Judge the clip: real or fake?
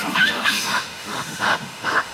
fake